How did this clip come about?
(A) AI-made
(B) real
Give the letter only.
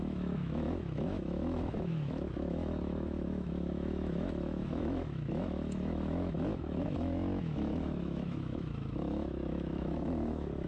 A